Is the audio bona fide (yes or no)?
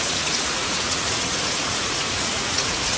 no